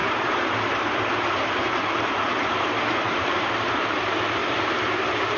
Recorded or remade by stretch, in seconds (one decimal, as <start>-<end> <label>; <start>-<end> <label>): 0.0-3.2 remade; 3.2-4.4 recorded; 4.4-5.4 remade